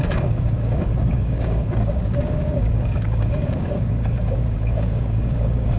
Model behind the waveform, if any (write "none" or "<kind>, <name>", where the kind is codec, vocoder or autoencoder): codec, DAC